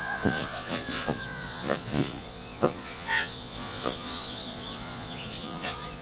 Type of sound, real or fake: fake